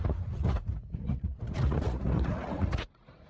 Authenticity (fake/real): fake